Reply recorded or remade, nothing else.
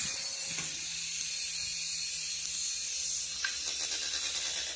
recorded